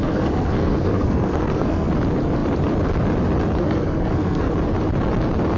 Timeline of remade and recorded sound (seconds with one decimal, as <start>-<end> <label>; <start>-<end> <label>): 0.0-1.9 remade; 1.9-3.6 recorded; 3.6-4.5 remade; 4.5-5.6 recorded